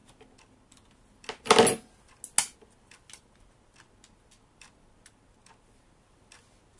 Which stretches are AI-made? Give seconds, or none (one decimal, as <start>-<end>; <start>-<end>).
none